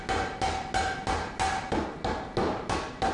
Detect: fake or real real